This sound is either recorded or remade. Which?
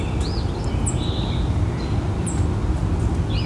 recorded